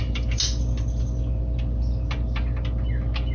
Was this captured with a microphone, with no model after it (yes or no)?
yes